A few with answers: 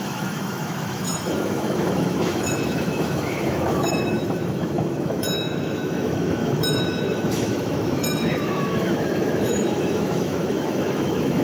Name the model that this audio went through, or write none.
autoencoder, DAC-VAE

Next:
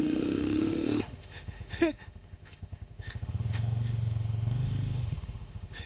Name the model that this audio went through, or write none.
autoencoder, DAC-VAE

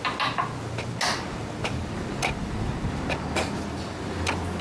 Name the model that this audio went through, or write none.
none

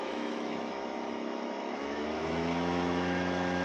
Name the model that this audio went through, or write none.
autoencoder, DAC-VAE